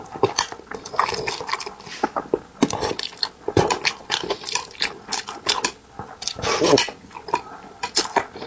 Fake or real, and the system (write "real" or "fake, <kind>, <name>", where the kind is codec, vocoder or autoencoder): real